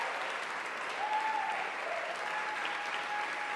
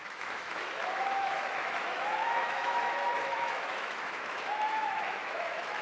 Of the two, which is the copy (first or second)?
second